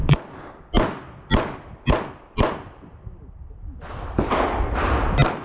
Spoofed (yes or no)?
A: no